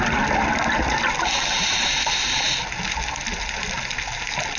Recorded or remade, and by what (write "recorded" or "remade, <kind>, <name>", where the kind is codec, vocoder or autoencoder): recorded